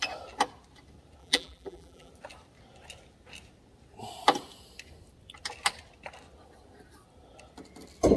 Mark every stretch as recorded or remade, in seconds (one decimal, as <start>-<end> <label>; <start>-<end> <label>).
0.0-1.2 recorded; 1.2-2.1 remade; 2.1-8.2 recorded